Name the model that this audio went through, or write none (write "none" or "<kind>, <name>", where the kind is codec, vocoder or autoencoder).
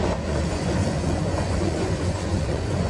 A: vocoder, Vocos